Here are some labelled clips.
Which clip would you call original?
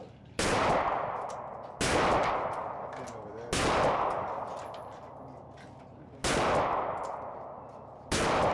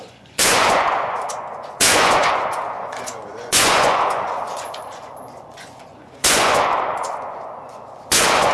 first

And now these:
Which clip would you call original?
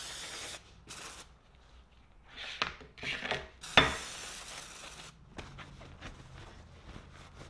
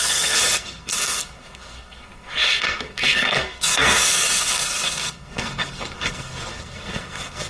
first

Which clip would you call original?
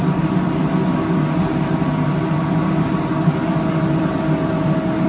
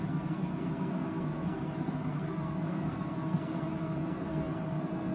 first